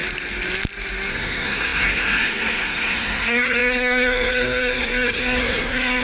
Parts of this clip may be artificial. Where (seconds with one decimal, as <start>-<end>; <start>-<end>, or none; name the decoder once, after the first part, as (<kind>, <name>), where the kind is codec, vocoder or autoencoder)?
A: 1.1-6.0 (codec, SNAC)